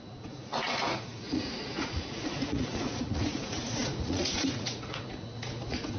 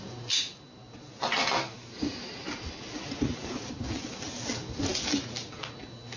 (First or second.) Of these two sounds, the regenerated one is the first